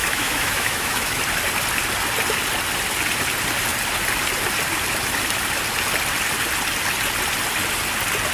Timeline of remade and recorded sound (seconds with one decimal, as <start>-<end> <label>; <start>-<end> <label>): 0.0-1.2 remade; 1.2-8.3 recorded